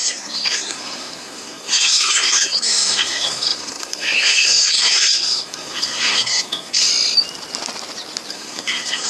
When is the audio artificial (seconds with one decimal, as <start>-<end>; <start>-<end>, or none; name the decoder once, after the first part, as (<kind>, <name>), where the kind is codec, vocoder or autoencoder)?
0.0-6.9 (codec, SNAC); 8.3-9.1